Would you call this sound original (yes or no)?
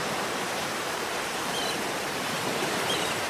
no